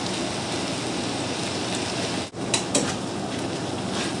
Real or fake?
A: real